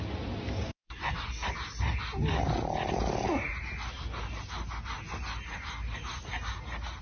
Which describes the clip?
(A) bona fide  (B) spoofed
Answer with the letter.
A